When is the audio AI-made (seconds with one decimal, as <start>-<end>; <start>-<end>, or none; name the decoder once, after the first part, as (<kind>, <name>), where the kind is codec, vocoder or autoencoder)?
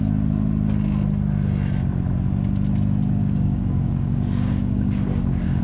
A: 3.2-5.6 (codec, DAC)